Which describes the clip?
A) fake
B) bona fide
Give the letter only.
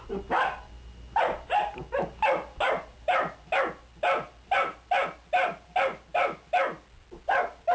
B